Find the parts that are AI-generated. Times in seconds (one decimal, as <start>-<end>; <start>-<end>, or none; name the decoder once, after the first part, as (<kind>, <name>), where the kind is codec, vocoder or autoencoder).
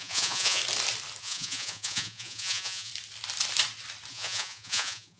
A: 0.0-0.6 (vocoder, Vocos); 1.2-2.9; 4.1-5.2